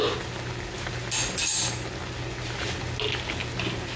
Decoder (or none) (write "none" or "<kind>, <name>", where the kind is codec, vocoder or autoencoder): none